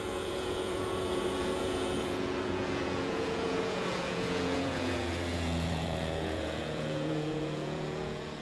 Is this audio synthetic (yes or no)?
yes